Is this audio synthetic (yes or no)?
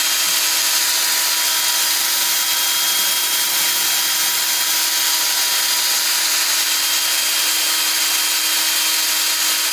no